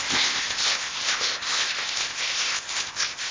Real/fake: fake